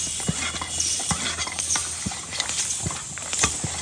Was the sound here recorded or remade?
recorded